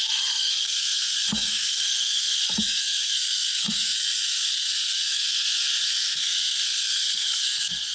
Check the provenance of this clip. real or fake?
fake